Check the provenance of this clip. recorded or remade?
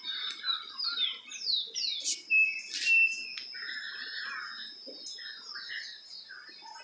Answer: recorded